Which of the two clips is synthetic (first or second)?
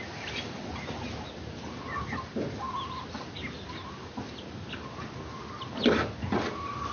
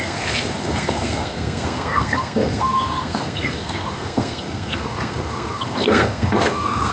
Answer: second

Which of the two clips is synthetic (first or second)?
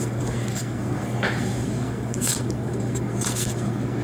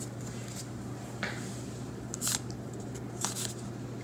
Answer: first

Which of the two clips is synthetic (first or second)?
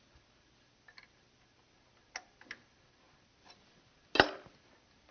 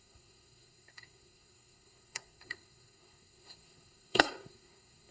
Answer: second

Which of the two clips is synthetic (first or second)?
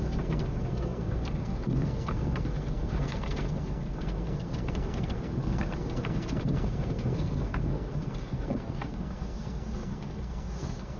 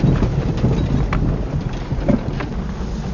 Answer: first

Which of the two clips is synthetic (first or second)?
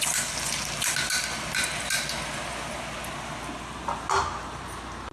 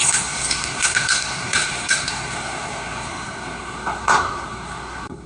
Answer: second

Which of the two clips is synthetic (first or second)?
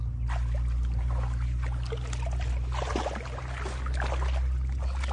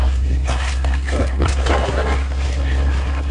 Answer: second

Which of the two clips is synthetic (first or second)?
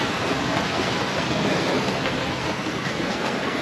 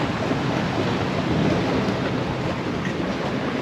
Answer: first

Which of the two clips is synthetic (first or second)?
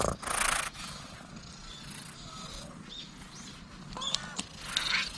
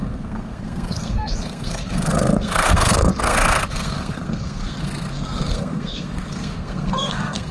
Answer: second